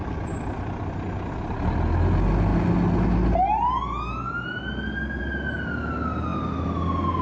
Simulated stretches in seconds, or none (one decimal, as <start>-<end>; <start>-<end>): none